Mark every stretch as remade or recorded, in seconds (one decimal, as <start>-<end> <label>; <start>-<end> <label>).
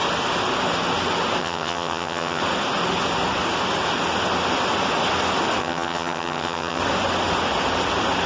0.0-1.4 recorded; 1.4-2.4 remade; 2.4-5.6 recorded; 5.6-6.8 remade; 6.8-8.3 recorded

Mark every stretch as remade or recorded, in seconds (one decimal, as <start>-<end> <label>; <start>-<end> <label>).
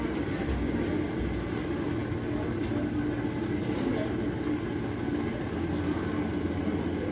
0.0-7.1 recorded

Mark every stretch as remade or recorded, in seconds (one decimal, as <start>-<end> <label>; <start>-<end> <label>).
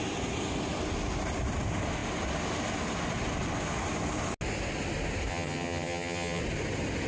0.0-5.3 recorded; 5.3-6.4 remade; 6.4-7.1 recorded